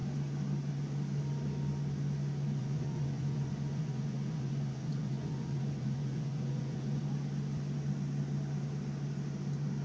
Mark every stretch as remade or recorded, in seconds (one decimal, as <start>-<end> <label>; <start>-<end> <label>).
0.0-2.6 recorded; 2.6-7.0 remade; 7.0-9.8 recorded

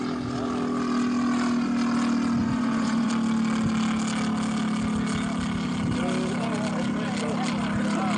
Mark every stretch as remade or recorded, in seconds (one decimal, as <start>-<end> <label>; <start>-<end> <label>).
0.0-2.4 recorded; 2.4-3.1 remade; 3.1-8.2 recorded